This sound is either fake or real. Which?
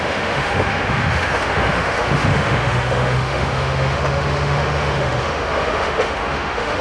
fake